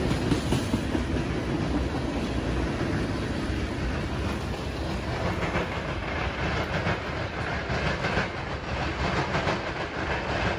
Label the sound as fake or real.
real